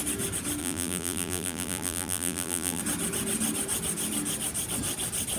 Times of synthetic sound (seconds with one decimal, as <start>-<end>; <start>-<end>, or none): 0.6-2.8